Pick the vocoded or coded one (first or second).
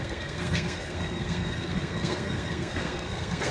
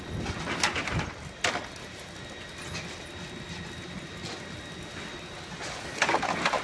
first